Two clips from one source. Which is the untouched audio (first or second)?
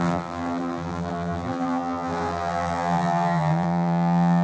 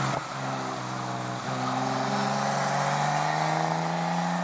second